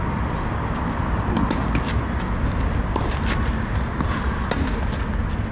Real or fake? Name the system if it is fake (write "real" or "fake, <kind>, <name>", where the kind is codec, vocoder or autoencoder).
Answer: real